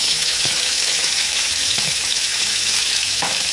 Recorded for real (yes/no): no